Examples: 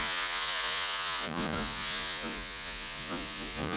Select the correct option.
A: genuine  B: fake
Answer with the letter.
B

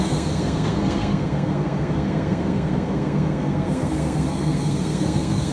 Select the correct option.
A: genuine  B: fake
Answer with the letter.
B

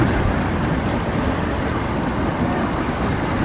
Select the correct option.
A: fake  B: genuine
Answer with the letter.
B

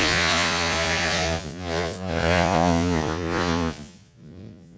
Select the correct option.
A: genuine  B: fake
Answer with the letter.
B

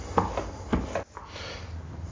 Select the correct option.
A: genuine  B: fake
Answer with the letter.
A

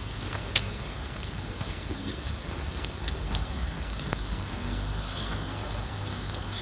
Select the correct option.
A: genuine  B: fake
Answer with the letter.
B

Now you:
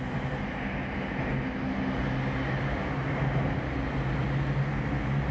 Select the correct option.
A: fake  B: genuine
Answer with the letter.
B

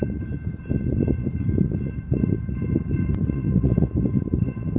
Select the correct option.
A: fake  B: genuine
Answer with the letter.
A